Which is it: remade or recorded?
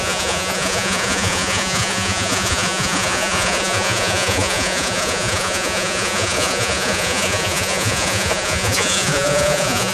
remade